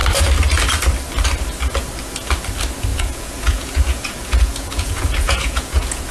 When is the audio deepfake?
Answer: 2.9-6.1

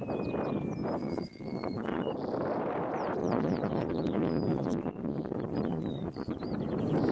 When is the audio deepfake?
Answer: 1.0-2.1; 3.2-6.4

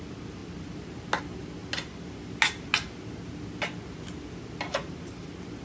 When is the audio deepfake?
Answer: none

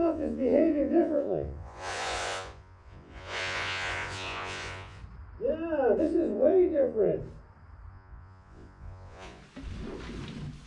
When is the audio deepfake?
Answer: 0.0-5.0; 6.0-7.1; 7.9-9.4

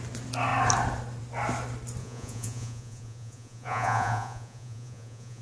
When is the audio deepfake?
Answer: 2.0-5.4

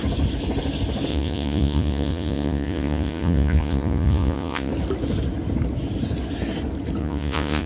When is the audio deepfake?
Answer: 1.1-4.7; 7.0-7.7